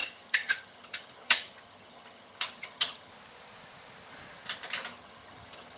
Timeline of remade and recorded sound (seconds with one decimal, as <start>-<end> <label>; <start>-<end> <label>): 0.0-3.1 remade; 3.1-4.9 recorded; 4.9-5.8 remade